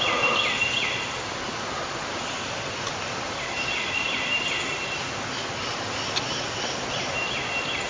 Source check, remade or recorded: recorded